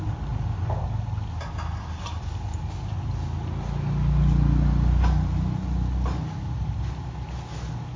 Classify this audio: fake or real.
real